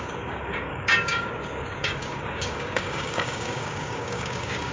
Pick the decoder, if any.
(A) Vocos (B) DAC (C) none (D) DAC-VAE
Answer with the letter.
B